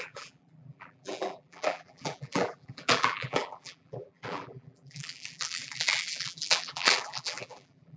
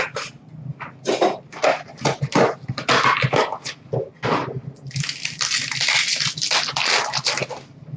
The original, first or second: second